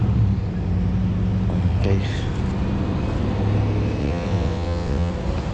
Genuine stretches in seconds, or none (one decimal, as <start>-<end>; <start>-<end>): 0.0-4.0; 5.1-5.5